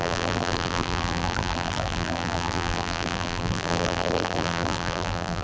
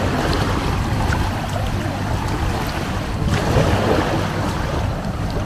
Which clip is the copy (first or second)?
first